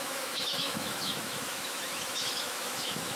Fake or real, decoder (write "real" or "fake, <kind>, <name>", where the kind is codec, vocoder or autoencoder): fake, autoencoder, DAC-VAE